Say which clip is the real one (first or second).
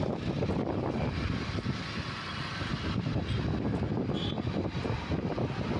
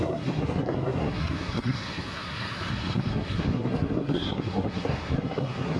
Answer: first